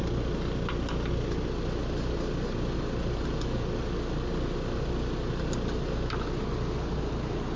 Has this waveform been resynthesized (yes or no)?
no